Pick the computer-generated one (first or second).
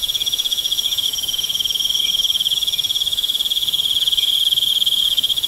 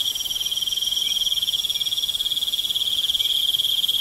first